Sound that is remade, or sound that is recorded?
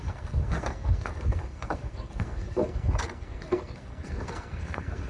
remade